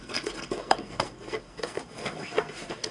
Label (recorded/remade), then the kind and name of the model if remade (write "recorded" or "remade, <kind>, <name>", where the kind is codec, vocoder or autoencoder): remade, codec, SNAC